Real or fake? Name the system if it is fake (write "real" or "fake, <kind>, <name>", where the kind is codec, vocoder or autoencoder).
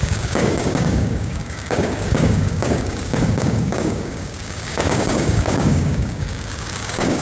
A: fake, codec, DAC